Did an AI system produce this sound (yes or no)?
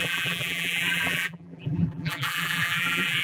yes